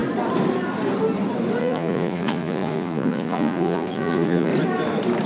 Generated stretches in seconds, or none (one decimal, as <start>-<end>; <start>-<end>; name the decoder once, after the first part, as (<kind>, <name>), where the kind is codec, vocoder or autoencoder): 1.6-4.5 (vocoder, Vocos)

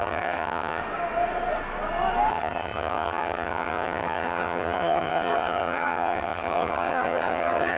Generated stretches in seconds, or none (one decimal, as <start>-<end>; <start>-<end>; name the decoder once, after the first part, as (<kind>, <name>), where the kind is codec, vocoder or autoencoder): 0.0-0.8 (vocoder, HiFi-GAN); 2.3-7.8

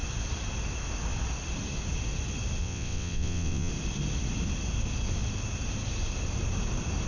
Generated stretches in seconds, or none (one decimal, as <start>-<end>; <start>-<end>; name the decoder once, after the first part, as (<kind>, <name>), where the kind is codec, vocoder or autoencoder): 2.6-3.7 (vocoder, WaveNeXt)

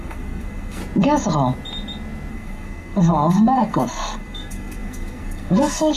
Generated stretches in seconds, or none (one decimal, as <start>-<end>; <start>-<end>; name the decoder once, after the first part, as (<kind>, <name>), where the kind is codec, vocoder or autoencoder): 0.0-0.8 (codec, SNAC); 2.3-6.0

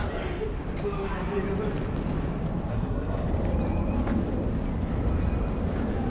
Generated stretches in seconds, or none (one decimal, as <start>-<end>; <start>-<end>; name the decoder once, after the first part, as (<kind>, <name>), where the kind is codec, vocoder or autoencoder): 2.7-3.3 (codec, SNAC)

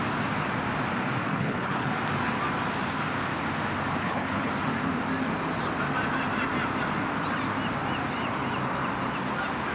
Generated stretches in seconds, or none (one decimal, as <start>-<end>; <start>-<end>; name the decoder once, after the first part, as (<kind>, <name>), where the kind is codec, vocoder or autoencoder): 1.3-1.9 (codec, HILCodec); 4.0-4.5

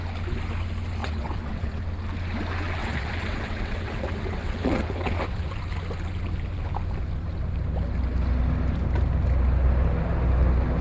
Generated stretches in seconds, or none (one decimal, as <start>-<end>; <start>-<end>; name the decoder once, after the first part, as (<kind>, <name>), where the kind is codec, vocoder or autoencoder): 1.0-1.8 (vocoder, WaveNeXt); 2.8-5.6

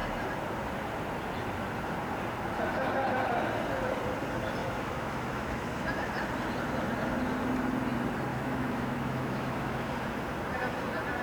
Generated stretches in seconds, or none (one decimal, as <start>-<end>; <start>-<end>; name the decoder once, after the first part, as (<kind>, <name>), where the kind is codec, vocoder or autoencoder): 4.6-6.1 (autoencoder, DAC-VAE); 8.3-9.9